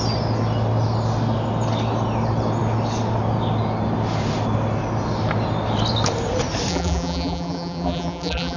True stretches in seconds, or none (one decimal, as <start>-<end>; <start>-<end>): 0.0-6.7